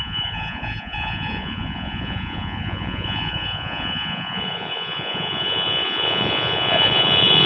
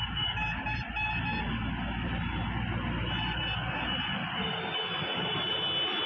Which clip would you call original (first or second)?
second